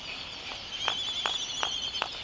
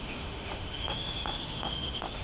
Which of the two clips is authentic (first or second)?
first